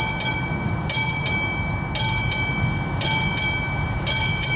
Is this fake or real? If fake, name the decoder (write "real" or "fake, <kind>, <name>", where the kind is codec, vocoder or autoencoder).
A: real